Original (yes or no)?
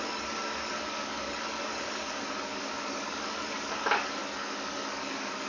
no